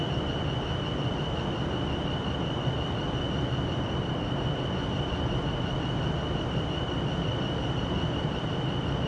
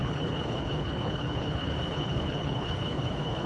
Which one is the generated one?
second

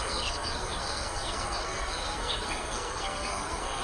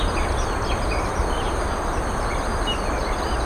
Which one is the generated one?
first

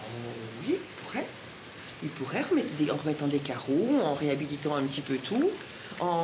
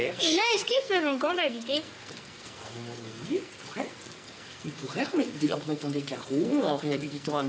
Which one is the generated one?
second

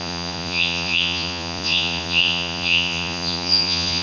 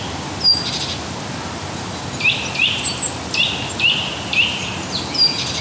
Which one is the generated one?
first